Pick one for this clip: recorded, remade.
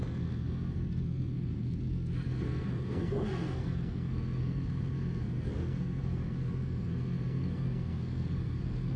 remade